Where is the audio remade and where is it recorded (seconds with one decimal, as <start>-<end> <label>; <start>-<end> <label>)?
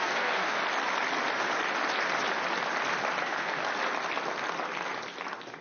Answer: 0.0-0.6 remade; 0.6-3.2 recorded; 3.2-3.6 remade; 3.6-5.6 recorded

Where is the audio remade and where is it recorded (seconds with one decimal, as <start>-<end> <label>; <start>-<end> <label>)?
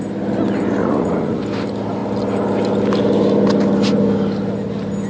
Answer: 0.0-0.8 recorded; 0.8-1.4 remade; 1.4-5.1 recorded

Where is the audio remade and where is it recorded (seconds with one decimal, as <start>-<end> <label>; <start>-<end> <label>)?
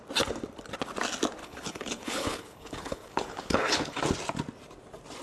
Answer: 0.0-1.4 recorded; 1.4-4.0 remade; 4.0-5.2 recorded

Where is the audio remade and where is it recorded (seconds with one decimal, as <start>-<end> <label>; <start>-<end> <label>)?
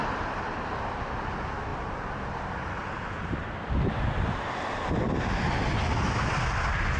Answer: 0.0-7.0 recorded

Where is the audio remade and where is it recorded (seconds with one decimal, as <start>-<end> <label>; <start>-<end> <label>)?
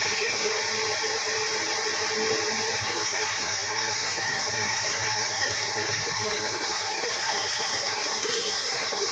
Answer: 0.0-0.5 remade; 0.5-2.8 recorded; 2.8-9.1 remade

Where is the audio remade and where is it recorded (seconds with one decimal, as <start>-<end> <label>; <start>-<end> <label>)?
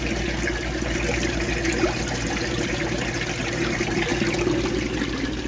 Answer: 0.0-5.5 recorded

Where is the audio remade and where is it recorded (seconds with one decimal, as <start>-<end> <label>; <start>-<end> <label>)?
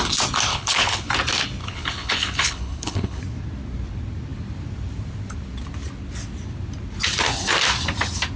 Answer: 0.0-0.5 recorded; 0.5-1.1 remade; 1.1-1.6 recorded; 1.6-3.2 remade; 3.2-8.4 recorded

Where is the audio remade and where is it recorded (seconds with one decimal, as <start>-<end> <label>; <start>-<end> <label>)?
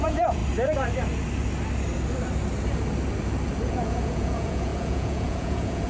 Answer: 0.0-0.4 remade; 0.4-3.7 recorded; 3.7-5.9 remade